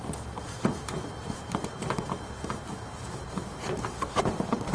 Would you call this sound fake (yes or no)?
yes